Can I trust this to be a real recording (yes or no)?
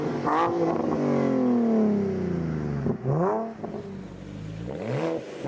yes